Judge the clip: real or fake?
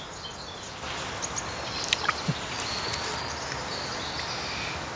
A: real